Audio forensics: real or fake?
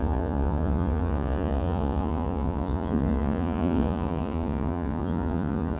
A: fake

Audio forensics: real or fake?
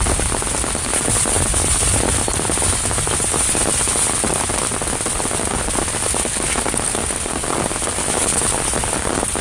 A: real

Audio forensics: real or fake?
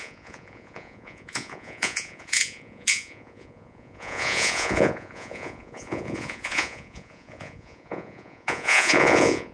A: fake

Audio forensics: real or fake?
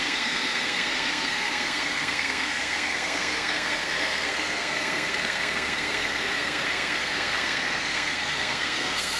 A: fake